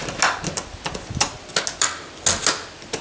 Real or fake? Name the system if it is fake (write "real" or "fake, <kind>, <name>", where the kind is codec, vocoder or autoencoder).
real